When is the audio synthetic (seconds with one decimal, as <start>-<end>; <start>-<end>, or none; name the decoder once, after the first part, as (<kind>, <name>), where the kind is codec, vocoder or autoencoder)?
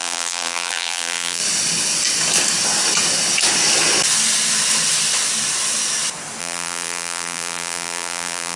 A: 0.0-1.4 (vocoder, BigVGAN v2); 6.4-8.6